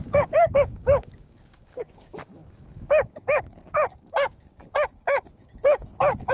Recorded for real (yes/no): no